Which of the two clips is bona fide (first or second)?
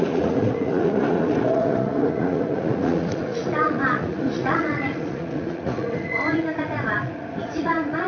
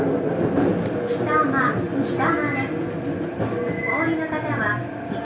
second